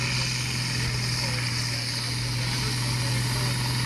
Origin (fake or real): real